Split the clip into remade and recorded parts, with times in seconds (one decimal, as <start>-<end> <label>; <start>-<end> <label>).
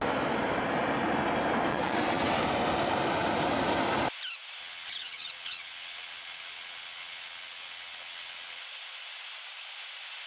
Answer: 0.0-1.7 recorded; 1.7-2.4 remade; 2.4-4.6 recorded; 4.6-8.6 remade; 8.6-10.3 recorded